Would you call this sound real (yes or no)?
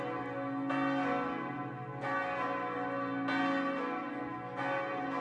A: yes